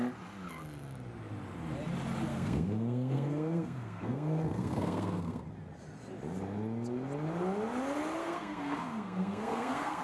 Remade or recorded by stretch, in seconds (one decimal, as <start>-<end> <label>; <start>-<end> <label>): 0.0-2.3 recorded; 2.3-5.4 remade; 5.4-8.2 recorded; 8.2-10.0 remade